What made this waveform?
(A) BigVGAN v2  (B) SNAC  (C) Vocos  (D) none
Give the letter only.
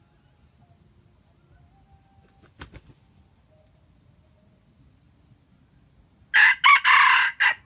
D